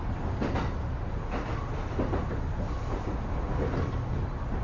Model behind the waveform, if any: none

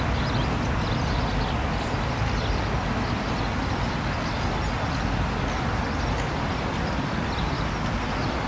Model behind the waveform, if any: none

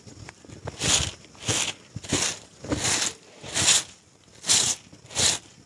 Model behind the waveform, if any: none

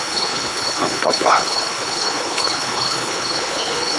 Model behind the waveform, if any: codec, HILCodec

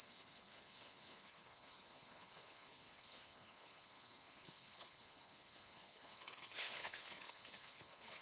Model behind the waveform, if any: codec, HILCodec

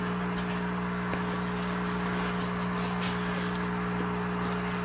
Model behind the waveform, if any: none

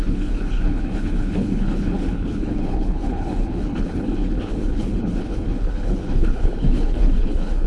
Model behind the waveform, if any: codec, HILCodec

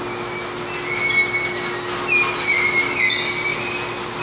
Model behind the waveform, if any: none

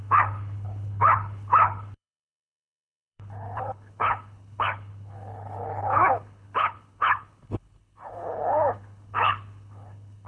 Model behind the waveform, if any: codec, HILCodec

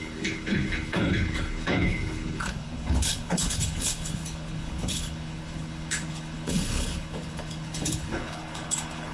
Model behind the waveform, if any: codec, HILCodec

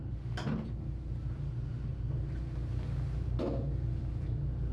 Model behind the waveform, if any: none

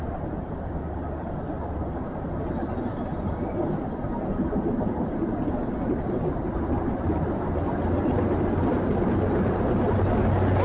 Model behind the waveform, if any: none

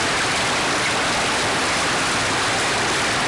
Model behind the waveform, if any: none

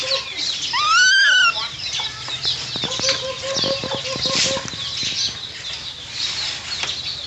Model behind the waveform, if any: none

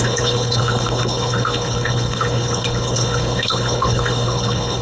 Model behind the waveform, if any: codec, HILCodec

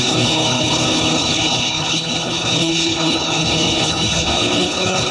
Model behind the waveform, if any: codec, HILCodec